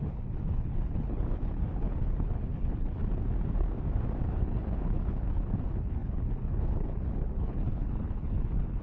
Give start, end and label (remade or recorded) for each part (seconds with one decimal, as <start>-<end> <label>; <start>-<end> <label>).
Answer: 0.0-3.0 remade; 3.0-4.3 recorded; 4.3-8.8 remade